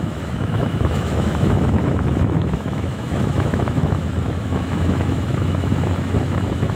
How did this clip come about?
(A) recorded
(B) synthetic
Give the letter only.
B